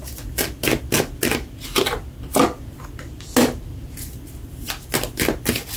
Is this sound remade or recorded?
recorded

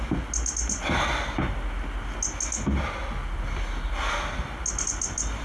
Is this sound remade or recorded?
recorded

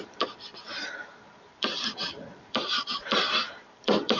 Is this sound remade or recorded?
remade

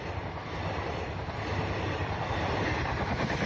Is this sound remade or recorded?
recorded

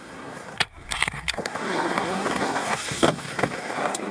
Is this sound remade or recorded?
remade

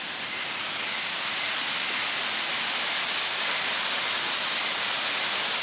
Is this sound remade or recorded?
recorded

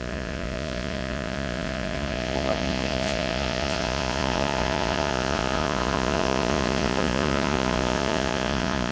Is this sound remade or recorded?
remade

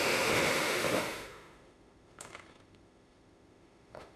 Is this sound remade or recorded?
remade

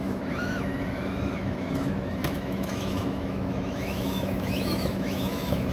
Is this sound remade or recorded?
remade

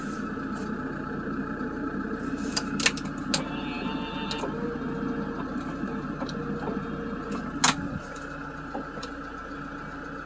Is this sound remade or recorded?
recorded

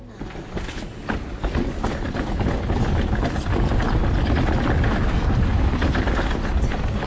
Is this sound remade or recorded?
recorded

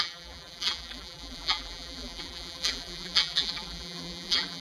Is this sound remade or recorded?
remade